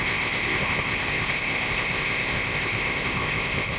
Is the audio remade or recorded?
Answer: remade